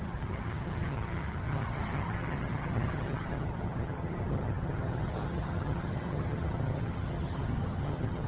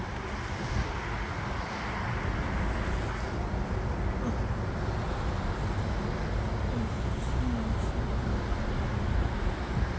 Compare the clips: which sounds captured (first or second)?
second